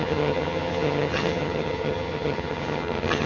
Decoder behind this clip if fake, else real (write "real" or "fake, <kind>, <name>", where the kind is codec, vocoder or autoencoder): fake, vocoder, HiFi-GAN